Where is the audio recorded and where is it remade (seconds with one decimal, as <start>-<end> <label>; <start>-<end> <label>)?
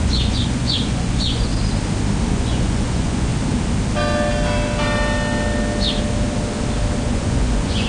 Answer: 0.0-1.5 remade; 1.5-2.3 recorded; 2.3-3.3 remade; 3.3-7.0 recorded; 7.0-7.9 remade